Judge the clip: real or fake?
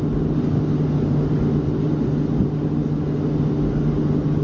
real